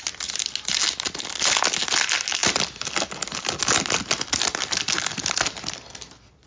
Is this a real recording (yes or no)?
yes